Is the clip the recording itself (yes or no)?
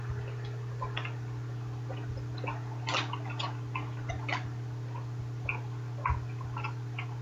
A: yes